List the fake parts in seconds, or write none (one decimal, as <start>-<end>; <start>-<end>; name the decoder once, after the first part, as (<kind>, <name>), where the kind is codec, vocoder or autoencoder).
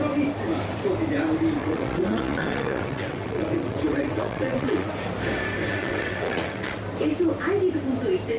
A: 1.6-4.9 (vocoder, WaveNeXt); 5.7-6.8